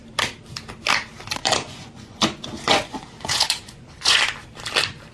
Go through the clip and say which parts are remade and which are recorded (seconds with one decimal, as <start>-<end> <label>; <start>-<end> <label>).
0.0-1.4 recorded; 1.4-4.2 remade; 4.2-5.1 recorded